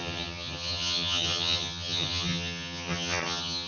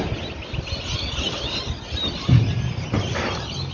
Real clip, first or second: second